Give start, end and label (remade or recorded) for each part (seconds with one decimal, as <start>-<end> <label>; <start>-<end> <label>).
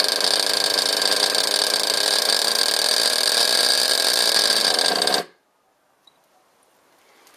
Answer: 0.0-7.4 recorded